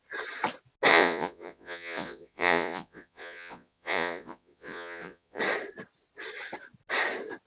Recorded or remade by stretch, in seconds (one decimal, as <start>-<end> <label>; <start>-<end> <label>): 0.0-0.9 recorded; 0.9-5.4 remade; 5.4-7.5 recorded